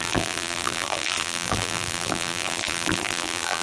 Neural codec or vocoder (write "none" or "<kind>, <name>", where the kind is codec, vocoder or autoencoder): vocoder, BigVGAN v2